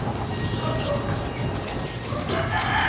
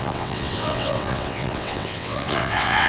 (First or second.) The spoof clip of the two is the second